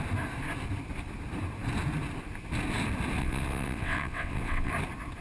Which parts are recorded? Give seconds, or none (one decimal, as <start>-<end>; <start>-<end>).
0.0-3.2; 4.7-5.2